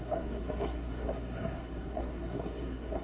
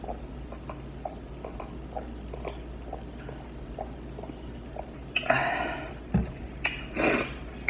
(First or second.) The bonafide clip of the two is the second